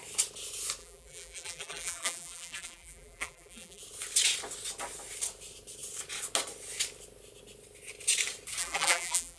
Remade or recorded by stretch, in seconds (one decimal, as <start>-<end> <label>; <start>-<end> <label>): 0.0-0.8 recorded; 0.8-3.8 remade; 3.8-8.6 recorded; 8.6-9.4 remade